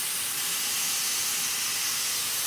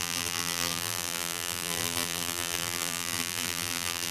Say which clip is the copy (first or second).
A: second